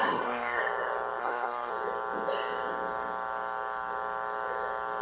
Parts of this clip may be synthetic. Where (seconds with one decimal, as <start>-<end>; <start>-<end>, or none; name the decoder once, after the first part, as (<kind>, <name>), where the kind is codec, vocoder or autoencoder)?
0.0-0.6 (codec, SNAC); 1.2-1.7